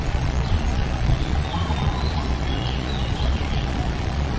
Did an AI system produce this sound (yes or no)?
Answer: yes